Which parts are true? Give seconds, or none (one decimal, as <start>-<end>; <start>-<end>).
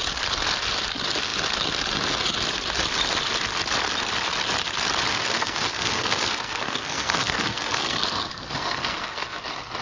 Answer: 0.0-5.1; 9.4-9.8